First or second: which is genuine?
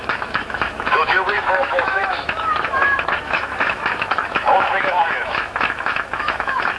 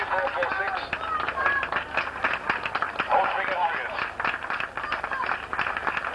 second